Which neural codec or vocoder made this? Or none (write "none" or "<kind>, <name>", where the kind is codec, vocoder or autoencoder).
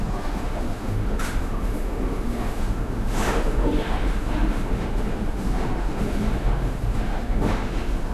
autoencoder, DAC-VAE